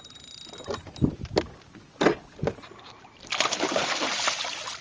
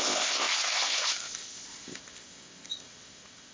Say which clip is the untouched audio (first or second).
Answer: first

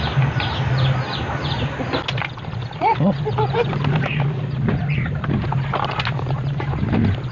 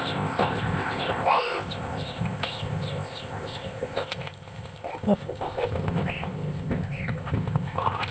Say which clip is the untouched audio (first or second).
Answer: first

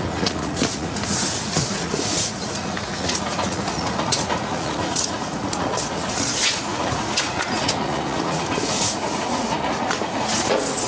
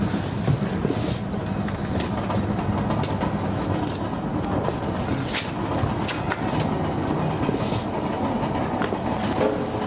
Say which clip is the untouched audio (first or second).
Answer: second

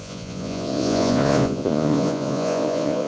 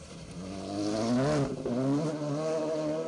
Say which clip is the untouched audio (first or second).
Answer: second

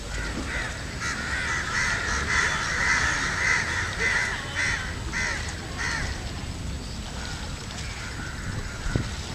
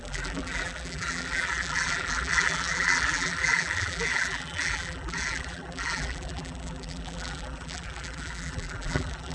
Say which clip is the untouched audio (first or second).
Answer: first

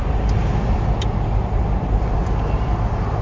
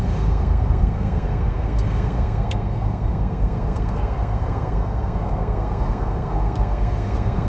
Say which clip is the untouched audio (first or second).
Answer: first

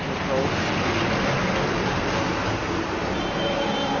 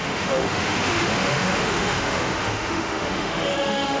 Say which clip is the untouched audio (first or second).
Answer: first